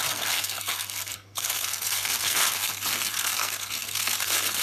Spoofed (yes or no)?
yes